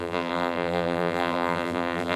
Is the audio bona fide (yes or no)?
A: no